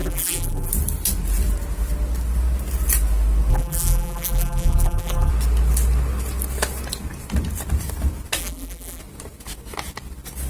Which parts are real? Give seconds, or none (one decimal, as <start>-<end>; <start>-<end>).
0.7-3.5; 5.3-8.4; 9.0-10.5